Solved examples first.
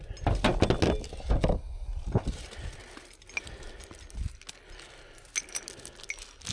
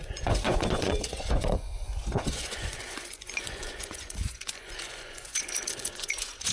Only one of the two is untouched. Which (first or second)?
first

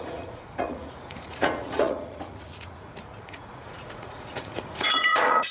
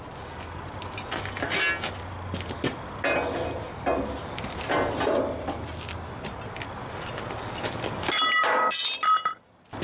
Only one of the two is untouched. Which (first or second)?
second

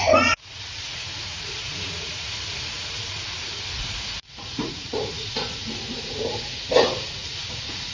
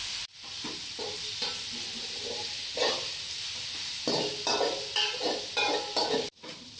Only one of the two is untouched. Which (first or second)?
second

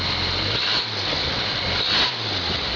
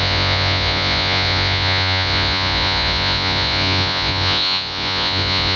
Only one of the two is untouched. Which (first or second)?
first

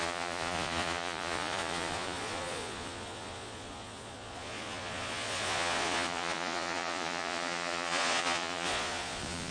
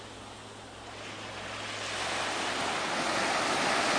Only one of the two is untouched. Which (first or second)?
second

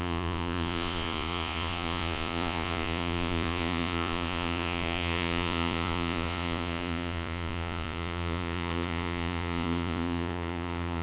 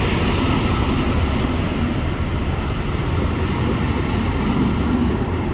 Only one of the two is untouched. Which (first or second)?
second